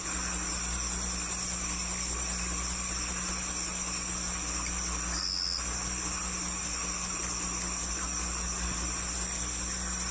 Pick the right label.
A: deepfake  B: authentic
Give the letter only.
B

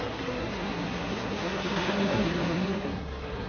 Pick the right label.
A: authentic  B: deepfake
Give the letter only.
B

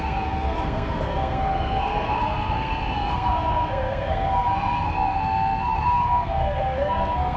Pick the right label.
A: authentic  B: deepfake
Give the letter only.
B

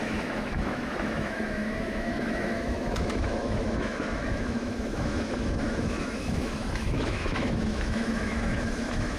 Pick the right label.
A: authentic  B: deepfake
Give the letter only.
B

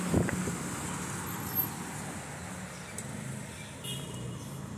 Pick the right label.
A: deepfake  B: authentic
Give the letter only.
B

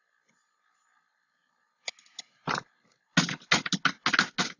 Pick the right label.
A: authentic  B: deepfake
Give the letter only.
A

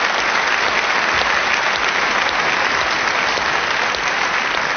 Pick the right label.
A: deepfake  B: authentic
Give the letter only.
B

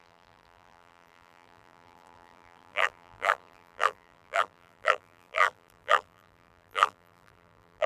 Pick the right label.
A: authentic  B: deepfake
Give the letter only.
B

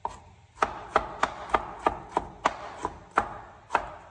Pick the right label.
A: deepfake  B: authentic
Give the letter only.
B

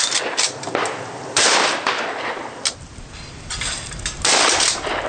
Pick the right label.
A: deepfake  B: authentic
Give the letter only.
B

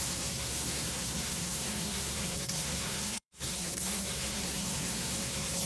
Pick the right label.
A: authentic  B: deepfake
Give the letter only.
B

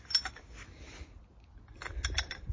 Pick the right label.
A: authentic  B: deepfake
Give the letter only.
A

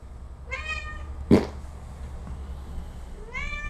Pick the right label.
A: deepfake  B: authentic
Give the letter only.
B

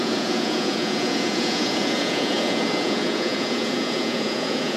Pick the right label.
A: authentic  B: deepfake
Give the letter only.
B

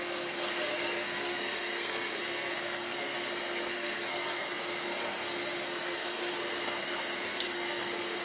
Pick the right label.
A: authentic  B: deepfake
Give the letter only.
B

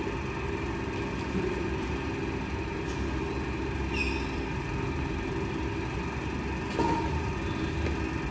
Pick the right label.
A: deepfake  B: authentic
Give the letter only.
B